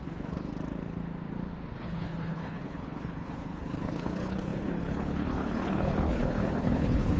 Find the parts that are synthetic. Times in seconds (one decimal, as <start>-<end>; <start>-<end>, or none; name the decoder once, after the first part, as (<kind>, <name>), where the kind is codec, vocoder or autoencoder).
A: 0.0-0.5 (codec, HILCodec); 1.8-7.2

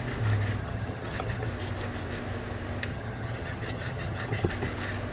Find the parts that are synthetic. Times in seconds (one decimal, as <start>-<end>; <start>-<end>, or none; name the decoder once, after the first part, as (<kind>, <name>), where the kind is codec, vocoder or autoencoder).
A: 0.6-1.5 (vocoder, HiFi-GAN); 2.9-4.5

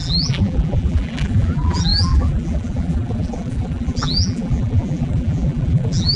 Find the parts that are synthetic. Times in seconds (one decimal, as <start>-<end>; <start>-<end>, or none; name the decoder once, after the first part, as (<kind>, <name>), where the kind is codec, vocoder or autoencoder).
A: 0.0-6.2 (vocoder, BigVGAN v2)